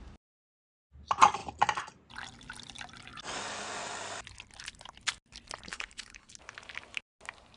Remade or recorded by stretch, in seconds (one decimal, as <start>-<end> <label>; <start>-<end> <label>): 0.0-5.7 recorded; 5.7-6.3 remade; 6.3-7.6 recorded